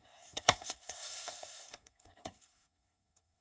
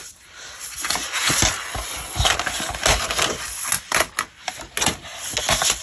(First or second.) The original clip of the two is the second